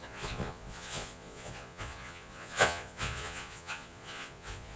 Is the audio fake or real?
fake